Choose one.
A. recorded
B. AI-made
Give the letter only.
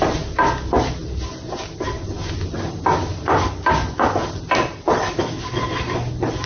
A